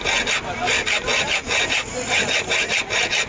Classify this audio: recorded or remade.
recorded